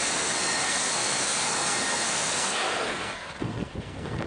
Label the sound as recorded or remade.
remade